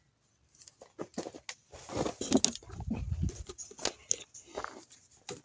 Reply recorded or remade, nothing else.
recorded